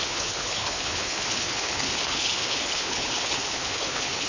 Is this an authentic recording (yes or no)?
no